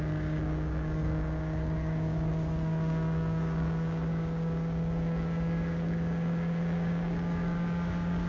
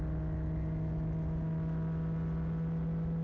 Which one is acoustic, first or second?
second